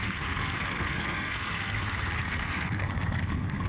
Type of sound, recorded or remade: remade